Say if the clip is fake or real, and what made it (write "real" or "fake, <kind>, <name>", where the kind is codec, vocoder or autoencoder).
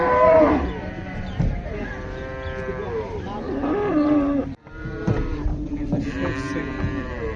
fake, vocoder, BigVGAN v2